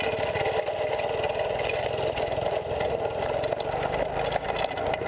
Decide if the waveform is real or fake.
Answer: real